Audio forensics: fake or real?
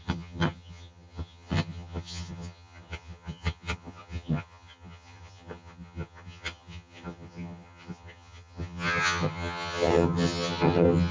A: fake